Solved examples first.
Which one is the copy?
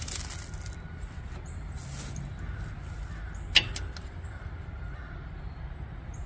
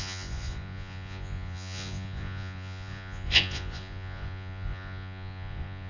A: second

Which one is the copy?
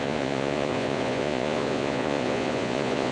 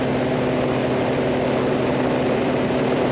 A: first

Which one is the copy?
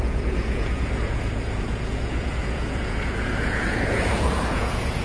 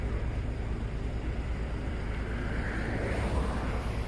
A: first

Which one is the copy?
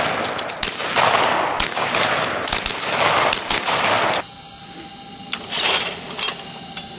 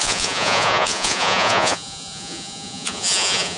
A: second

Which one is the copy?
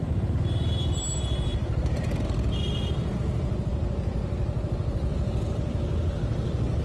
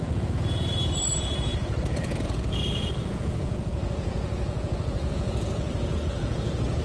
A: second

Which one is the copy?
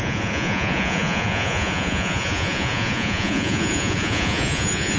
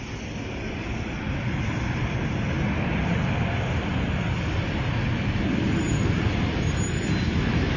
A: first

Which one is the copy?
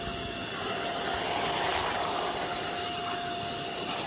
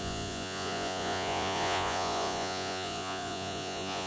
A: second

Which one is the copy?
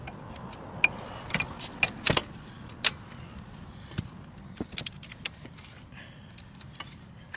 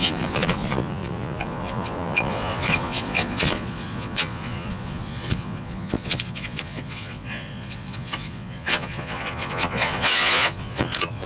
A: second